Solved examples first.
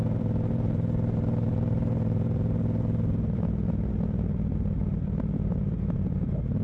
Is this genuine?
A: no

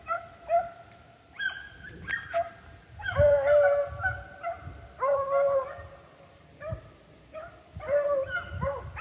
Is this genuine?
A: yes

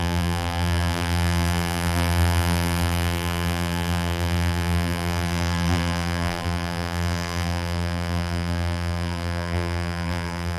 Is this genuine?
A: no